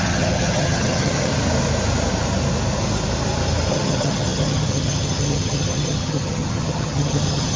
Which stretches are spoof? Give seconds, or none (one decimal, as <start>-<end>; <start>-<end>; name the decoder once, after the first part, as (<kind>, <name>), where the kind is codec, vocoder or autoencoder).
0.0-1.3 (vocoder, HiFi-GAN); 3.7-7.6